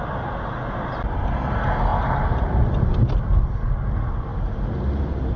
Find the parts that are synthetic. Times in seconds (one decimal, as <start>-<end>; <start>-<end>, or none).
none